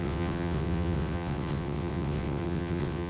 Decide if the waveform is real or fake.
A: fake